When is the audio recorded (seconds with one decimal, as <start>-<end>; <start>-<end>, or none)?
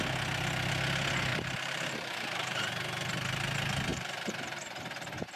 0.0-1.3; 2.7-3.9; 4.8-5.4